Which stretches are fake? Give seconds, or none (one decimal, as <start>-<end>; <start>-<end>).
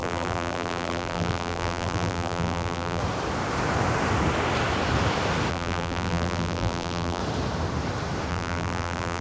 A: 0.0-3.0; 5.5-7.2; 8.3-9.2